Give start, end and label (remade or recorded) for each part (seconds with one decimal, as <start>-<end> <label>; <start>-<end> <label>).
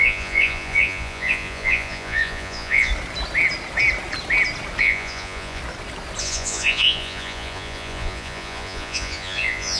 0.0-2.9 remade; 2.9-4.8 recorded; 4.8-5.6 remade; 5.6-6.2 recorded; 6.2-9.8 remade